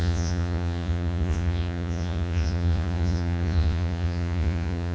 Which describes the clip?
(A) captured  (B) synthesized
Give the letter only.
B